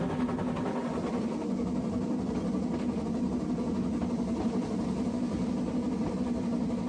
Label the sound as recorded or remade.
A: recorded